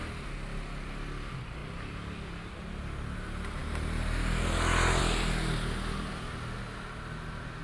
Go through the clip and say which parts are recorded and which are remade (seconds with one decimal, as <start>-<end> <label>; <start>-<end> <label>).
0.0-7.6 recorded